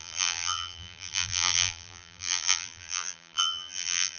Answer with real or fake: fake